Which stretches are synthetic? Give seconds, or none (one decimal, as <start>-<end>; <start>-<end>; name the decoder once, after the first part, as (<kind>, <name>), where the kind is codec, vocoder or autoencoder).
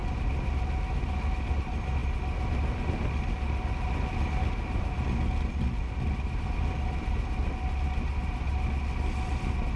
none